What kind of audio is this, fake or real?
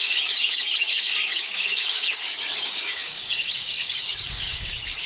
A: fake